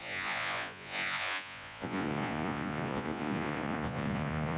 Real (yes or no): no